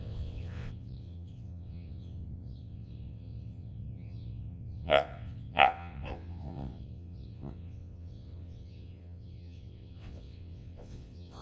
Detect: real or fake fake